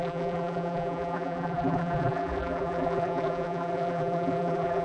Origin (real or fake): fake